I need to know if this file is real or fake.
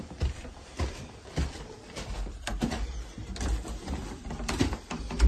fake